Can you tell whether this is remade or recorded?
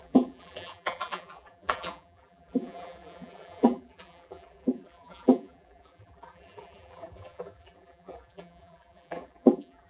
remade